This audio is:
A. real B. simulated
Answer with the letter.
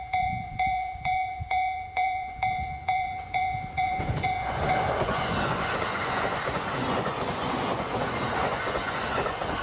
B